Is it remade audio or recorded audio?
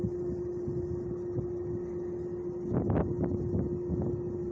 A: recorded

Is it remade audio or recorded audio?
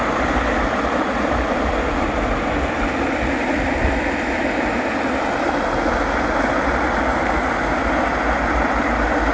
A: recorded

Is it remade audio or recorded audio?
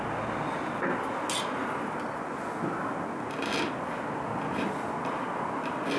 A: recorded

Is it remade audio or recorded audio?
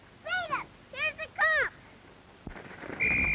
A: recorded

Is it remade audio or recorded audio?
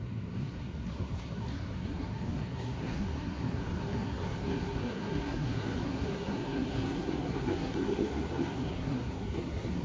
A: remade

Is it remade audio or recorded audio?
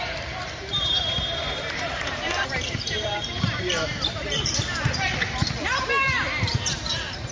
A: remade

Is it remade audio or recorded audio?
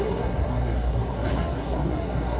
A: remade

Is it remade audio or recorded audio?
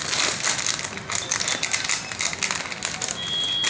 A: recorded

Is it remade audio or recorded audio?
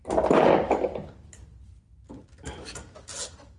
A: recorded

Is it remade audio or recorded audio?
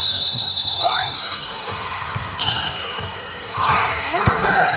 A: remade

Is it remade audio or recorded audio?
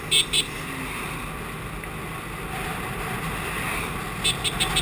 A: recorded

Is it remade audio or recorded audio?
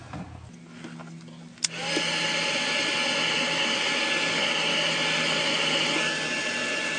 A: recorded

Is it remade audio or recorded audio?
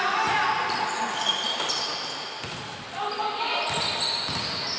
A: recorded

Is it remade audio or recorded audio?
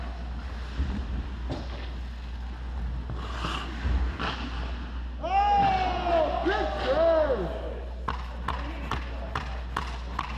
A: recorded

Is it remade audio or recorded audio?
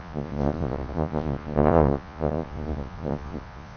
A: remade